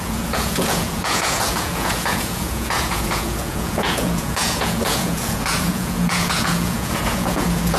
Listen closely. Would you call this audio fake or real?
fake